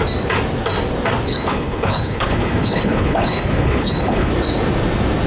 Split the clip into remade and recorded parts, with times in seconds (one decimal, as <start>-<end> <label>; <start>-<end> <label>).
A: 0.0-1.3 recorded; 1.3-4.3 remade; 4.3-5.3 recorded